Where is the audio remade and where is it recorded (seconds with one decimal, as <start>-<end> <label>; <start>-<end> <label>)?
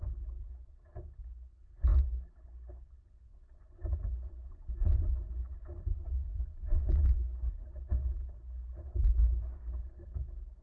0.0-3.3 recorded; 3.3-7.5 remade; 7.5-10.6 recorded